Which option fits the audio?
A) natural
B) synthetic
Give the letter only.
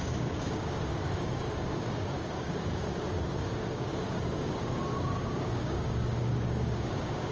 B